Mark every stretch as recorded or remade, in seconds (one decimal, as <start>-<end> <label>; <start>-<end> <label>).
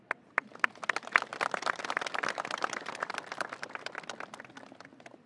0.0-1.3 recorded; 1.3-4.5 remade; 4.5-5.3 recorded